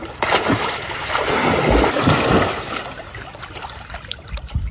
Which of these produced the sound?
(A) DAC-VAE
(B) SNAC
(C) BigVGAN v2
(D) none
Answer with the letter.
D